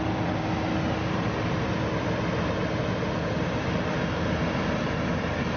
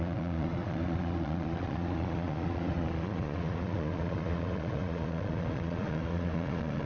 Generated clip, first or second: second